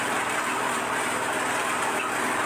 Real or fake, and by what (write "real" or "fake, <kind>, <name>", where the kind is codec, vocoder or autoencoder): real